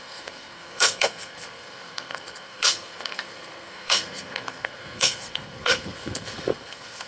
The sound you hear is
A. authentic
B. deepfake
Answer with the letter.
B